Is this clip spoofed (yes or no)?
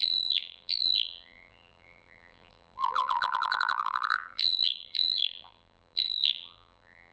yes